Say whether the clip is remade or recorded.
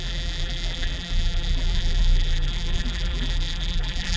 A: remade